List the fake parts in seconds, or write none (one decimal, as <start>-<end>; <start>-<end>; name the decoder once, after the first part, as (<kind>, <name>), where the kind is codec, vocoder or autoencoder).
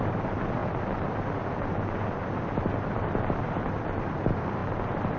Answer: none